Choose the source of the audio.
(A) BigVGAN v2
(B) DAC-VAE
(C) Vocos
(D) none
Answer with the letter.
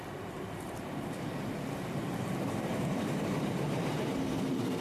A